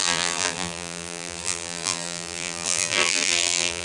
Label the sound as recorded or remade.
remade